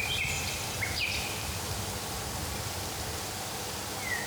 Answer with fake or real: real